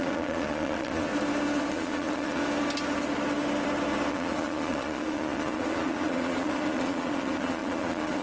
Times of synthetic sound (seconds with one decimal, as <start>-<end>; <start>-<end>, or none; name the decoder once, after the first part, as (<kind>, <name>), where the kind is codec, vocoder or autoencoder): 0.0-1.1 (vocoder, Vocos); 1.7-2.4; 4.1-8.2